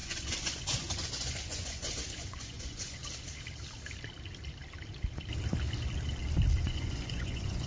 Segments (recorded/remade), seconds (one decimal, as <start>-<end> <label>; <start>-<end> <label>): 0.0-3.0 remade; 3.0-6.6 recorded; 6.6-7.7 remade